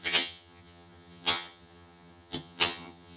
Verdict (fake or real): fake